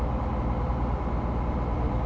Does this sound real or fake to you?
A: real